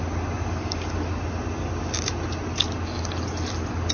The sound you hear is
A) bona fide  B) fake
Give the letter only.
A